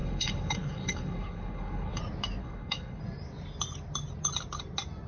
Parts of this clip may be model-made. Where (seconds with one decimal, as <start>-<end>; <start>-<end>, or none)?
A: 0.0-2.0; 2.4-3.0